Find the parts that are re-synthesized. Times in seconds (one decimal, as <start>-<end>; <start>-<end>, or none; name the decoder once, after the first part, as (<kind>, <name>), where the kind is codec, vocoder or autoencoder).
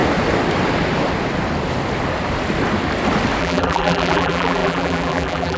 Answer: 3.4-5.6 (vocoder, BigVGAN v2)